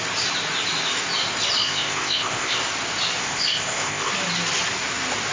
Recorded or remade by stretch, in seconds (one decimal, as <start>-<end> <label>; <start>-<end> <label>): 0.0-1.6 recorded; 1.6-2.6 remade; 2.6-3.2 recorded; 3.2-4.1 remade; 4.1-5.3 recorded